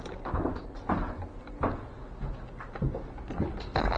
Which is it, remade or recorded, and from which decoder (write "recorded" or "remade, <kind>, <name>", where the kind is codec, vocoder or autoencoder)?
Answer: recorded